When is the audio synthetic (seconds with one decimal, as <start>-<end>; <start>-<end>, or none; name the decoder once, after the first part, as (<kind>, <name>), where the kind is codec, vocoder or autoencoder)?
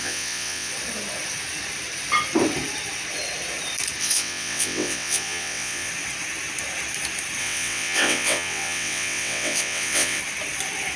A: 0.0-0.7 (vocoder, WaveNeXt); 4.0-5.9; 7.4-10.2